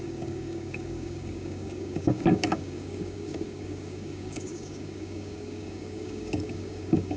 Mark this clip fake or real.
fake